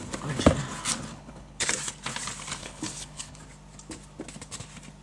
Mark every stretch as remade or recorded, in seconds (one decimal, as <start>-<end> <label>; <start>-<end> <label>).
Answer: 0.0-1.1 recorded; 1.1-1.7 remade; 1.7-2.6 recorded; 2.6-3.4 remade; 3.4-5.0 recorded